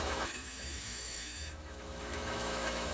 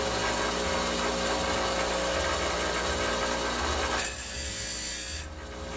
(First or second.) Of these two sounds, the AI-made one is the first